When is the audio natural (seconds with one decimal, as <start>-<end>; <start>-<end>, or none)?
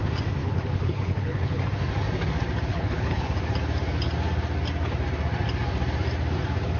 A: 0.0-0.4; 1.6-2.7; 3.3-6.8